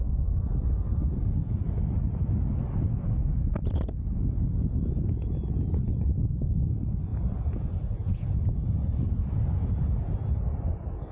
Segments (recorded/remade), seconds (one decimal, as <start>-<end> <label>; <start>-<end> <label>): 0.0-7.1 recorded; 7.1-8.5 remade; 8.5-11.1 recorded